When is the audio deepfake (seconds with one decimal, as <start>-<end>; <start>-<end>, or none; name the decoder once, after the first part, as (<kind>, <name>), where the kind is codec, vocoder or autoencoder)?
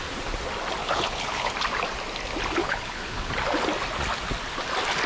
0.8-1.5 (codec, HILCodec); 2.6-3.3